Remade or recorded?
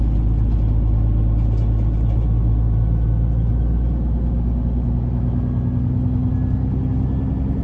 recorded